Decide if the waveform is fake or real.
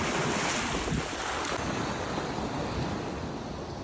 real